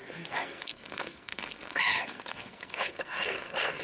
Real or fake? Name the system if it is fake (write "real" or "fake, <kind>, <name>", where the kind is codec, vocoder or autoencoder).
fake, codec, SNAC